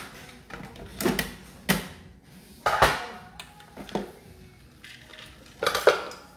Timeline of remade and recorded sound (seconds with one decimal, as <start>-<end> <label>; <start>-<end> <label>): 0.0-6.4 recorded